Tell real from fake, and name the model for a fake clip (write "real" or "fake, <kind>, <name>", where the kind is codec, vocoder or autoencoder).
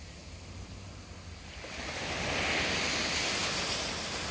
real